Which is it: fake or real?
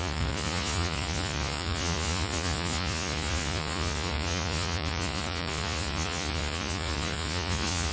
fake